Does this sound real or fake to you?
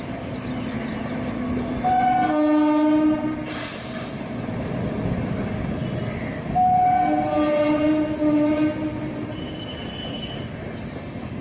real